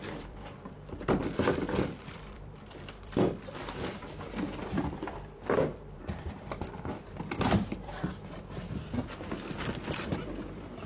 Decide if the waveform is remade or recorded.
remade